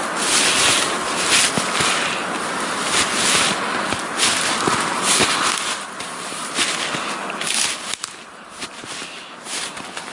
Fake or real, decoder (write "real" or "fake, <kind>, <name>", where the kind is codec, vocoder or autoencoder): real